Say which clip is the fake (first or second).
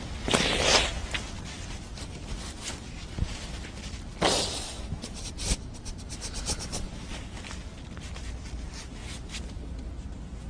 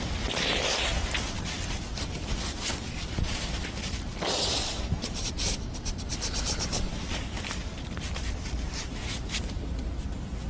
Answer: second